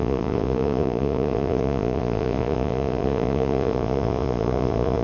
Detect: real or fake fake